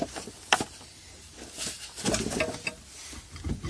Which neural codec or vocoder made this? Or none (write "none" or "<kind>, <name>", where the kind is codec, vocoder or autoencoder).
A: none